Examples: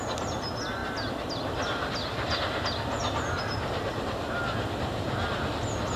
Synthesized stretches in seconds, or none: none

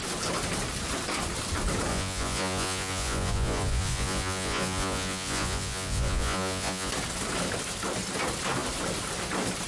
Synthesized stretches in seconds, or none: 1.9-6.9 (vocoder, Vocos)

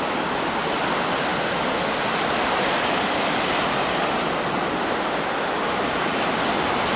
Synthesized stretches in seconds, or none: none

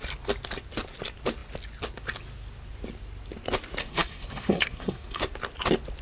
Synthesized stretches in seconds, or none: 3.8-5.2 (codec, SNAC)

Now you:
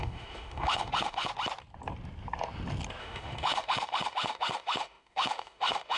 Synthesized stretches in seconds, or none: 0.0-1.3 (autoencoder, DAC-VAE); 3.0-6.0